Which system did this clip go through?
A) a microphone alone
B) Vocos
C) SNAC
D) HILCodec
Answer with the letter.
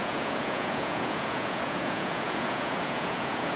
B